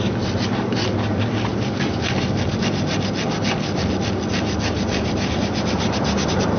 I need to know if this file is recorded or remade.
remade